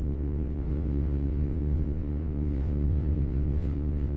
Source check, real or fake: fake